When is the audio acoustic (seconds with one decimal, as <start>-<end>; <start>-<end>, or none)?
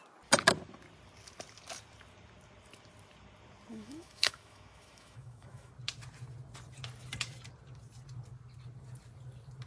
0.0-3.7; 5.7-9.7